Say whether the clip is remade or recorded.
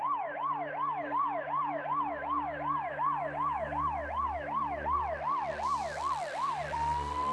recorded